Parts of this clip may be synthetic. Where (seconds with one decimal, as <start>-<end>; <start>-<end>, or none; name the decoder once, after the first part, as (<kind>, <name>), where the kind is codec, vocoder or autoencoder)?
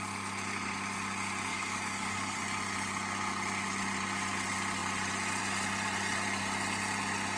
1.5-2.4 (codec, DAC)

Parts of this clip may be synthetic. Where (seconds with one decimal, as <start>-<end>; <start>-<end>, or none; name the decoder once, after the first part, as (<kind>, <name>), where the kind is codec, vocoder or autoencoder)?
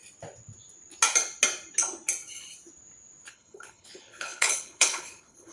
3.3-5.5 (codec, HILCodec)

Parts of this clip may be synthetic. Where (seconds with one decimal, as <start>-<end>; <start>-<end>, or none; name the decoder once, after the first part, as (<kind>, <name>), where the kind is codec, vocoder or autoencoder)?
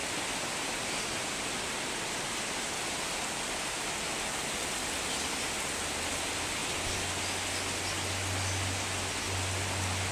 none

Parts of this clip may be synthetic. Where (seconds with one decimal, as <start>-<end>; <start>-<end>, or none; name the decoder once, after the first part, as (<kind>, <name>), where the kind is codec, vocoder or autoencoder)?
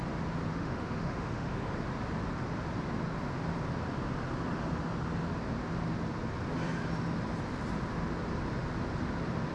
0.5-1.7 (autoencoder, DAC-VAE)